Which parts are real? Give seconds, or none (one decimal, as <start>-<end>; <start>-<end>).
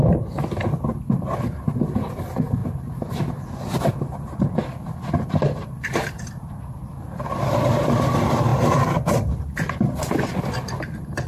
2.6-3.9; 5.4-6.2